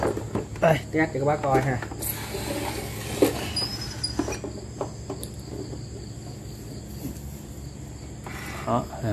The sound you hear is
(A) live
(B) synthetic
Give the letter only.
A